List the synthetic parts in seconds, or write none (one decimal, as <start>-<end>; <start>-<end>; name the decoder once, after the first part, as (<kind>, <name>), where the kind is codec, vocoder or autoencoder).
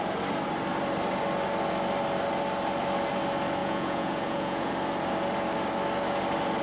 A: 3.6-4.7 (vocoder, Vocos)